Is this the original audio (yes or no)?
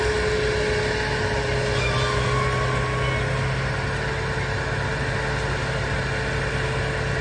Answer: yes